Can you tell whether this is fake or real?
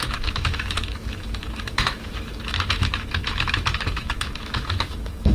fake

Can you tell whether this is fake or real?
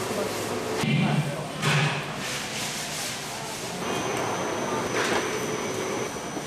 real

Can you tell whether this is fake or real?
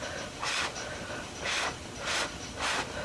real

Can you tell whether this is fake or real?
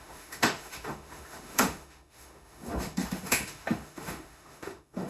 fake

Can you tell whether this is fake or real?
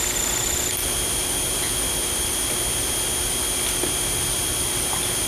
real